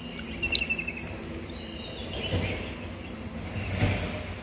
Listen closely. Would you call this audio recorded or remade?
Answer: recorded